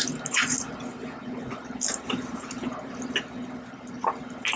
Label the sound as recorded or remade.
recorded